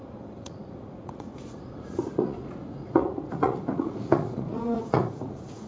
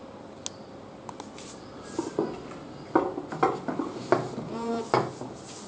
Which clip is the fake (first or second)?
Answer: first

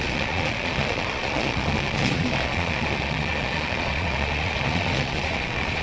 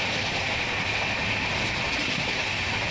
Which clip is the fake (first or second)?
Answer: first